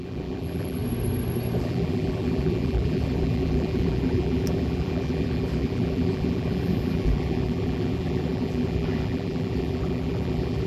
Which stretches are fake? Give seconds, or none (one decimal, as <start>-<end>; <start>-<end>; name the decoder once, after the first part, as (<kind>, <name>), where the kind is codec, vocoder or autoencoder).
0.0-0.8 (vocoder, BigVGAN v2); 1.6-10.7